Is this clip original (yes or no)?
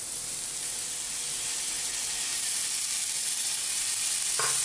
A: yes